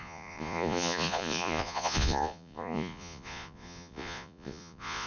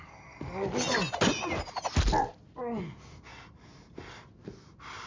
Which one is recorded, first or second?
second